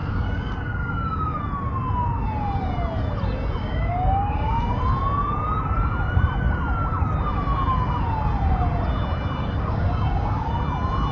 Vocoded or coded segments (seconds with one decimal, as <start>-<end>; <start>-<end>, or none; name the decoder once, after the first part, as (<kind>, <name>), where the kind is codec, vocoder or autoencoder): 0.0-1.4 (codec, DAC); 3.6-4.6; 9.4-10.5